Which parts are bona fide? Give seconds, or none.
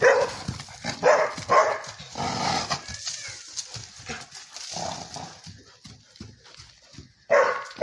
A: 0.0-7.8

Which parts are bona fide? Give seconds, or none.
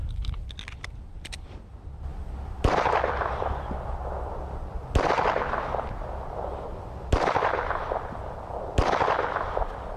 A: 0.0-10.0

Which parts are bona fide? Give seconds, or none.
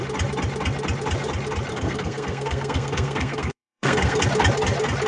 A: 0.0-1.7; 4.2-5.1